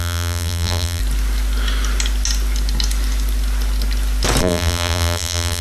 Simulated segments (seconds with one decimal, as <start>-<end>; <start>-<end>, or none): 0.0-1.0; 4.4-5.6